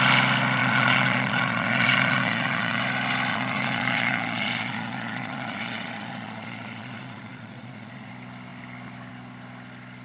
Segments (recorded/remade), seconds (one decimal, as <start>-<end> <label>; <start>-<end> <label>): 0.0-0.6 recorded; 0.6-2.8 remade; 2.8-3.3 recorded; 3.3-8.1 remade; 8.1-10.0 recorded